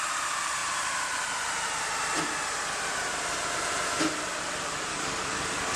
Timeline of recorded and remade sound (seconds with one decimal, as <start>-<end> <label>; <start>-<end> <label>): 0.0-4.9 recorded; 4.9-5.8 remade